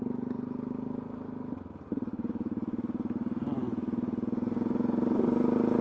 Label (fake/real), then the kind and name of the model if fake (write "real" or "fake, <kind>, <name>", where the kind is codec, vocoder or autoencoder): real